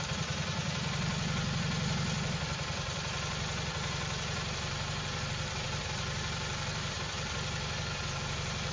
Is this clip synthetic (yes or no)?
yes